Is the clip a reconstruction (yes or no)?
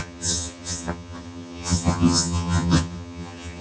yes